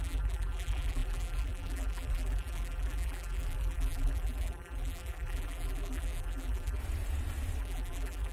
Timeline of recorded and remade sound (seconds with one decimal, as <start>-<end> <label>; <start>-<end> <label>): 0.0-6.8 remade; 6.8-7.6 recorded; 7.6-8.3 remade